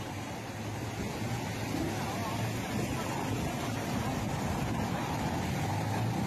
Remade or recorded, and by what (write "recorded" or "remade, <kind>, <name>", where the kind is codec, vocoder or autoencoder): recorded